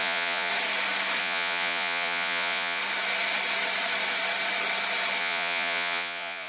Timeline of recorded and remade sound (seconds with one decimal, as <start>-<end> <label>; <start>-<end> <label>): 0.0-0.5 remade; 0.5-1.2 recorded; 1.2-2.8 remade; 2.8-5.2 recorded; 5.2-6.5 remade